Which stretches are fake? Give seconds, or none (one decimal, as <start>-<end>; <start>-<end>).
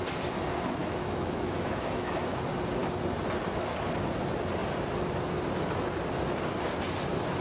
0.8-2.4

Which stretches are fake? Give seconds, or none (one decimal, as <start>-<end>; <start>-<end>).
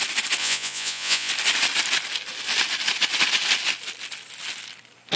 0.4-1.3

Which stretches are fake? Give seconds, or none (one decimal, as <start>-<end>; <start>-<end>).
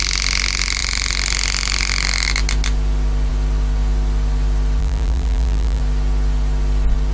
4.8-5.8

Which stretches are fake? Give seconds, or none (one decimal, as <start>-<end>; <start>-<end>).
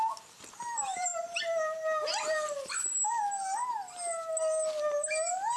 none